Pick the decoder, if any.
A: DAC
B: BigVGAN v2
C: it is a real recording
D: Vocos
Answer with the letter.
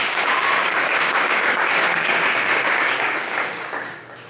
A